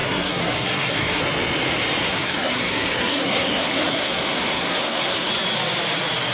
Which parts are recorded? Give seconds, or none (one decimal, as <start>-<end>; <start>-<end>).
1.2-2.0; 5.3-6.3